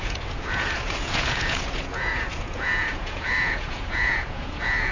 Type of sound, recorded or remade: remade